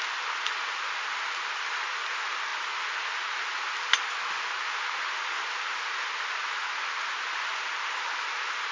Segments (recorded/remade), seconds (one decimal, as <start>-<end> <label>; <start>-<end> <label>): 0.0-8.7 recorded